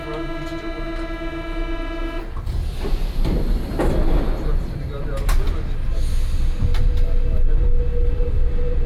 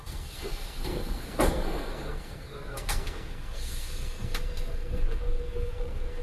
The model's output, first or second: second